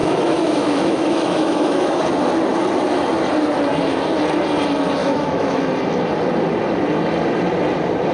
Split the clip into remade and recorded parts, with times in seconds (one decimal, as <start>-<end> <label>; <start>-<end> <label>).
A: 0.0-2.0 remade; 2.0-5.0 recorded; 5.0-5.6 remade; 5.6-8.1 recorded